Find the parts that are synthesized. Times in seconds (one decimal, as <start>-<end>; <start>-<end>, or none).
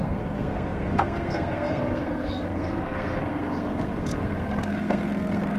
0.0-5.6